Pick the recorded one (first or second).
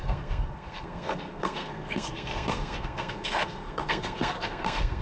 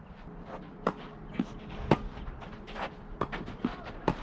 second